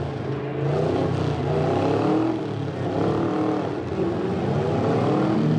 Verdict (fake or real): real